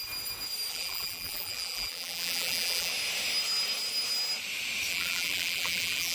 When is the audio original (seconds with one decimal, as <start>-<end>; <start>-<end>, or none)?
0.0-0.7; 2.9-4.9